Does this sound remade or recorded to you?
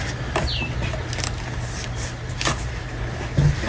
recorded